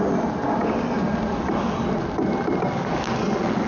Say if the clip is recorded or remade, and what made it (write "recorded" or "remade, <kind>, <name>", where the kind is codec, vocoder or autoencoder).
recorded